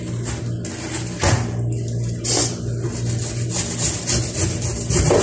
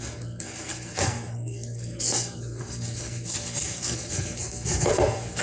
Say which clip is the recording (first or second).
first